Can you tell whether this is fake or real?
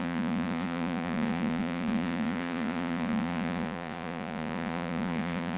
fake